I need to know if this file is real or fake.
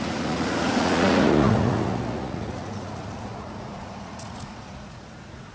fake